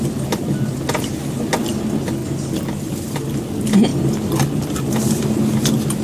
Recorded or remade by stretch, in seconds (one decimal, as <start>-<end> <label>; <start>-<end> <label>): 0.0-3.9 recorded; 3.9-4.7 remade; 4.7-6.0 recorded